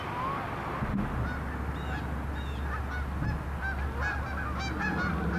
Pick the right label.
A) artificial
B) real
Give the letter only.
B